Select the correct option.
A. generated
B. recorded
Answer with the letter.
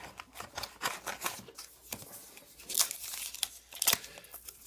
B